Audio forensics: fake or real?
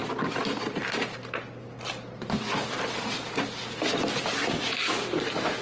real